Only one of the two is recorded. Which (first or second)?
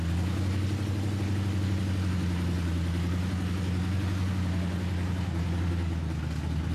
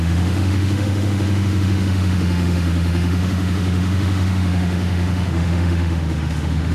first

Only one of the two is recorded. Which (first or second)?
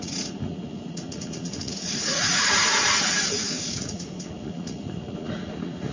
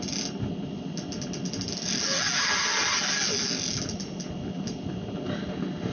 second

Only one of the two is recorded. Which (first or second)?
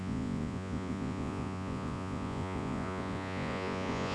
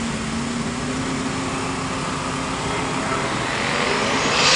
second